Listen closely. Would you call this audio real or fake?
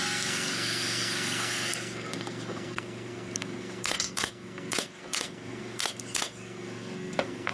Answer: fake